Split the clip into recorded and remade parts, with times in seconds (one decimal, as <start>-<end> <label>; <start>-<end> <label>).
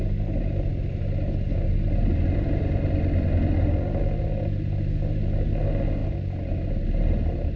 0.0-7.6 recorded